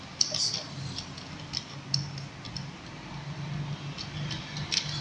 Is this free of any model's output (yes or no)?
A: yes